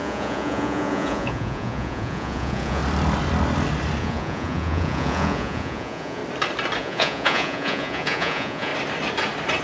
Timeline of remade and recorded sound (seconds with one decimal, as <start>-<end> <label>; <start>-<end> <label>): 0.0-2.8 remade; 2.8-4.0 recorded; 4.0-6.2 remade; 6.2-6.8 recorded; 6.8-8.7 remade; 8.7-9.6 recorded